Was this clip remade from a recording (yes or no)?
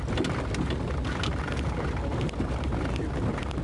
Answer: no